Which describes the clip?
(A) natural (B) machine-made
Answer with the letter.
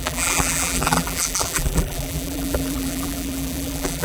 B